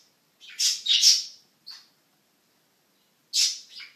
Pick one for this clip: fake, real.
real